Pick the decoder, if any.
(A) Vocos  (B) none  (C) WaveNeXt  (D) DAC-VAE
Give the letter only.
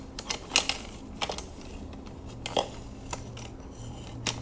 B